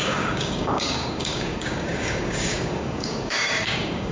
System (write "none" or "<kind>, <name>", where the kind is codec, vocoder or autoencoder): codec, DAC